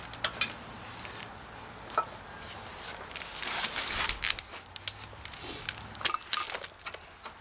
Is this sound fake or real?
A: real